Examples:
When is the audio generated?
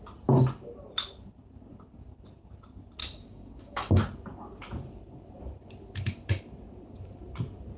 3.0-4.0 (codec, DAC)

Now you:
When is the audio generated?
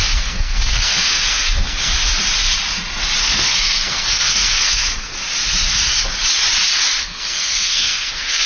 0.0-1.9 (codec, SNAC); 3.2-5.2; 7.0-8.5